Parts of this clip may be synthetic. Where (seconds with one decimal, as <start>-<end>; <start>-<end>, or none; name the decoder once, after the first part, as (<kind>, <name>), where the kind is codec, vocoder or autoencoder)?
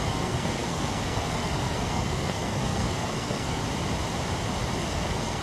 0.0-3.6 (codec, SNAC); 4.8-5.4